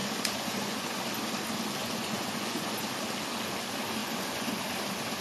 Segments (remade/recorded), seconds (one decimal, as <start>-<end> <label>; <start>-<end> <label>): 0.0-1.0 remade; 1.0-1.8 recorded; 1.8-2.8 remade; 2.8-4.0 recorded; 4.0-4.6 remade; 4.6-5.2 recorded